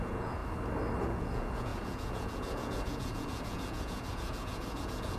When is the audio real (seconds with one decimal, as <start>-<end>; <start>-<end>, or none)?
0.4-1.0